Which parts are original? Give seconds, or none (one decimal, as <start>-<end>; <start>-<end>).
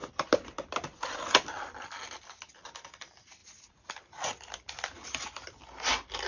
0.0-3.4; 3.9-6.3